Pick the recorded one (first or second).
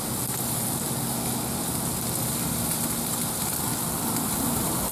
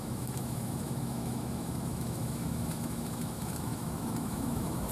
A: first